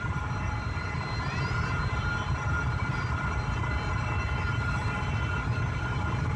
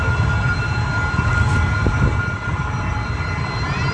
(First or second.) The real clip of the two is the second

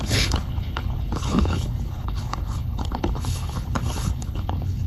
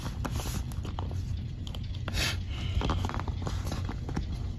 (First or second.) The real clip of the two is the second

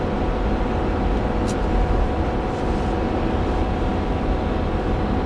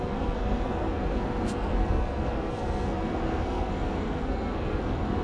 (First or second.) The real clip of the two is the first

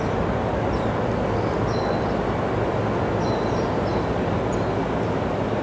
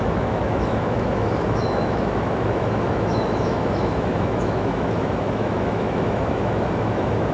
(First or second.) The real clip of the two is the first